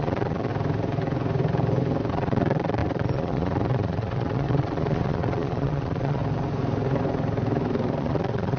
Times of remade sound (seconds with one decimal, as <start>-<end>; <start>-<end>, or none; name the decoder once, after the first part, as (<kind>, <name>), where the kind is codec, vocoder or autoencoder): 0.0-0.5 (vocoder, Vocos); 2.1-6.2; 8.0-8.6